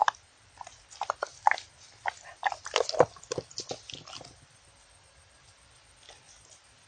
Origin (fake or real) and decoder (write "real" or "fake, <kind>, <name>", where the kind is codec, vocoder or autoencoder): real